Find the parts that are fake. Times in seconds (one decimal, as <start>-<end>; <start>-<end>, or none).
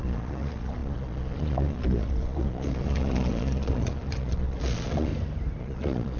0.0-5.1; 5.6-6.2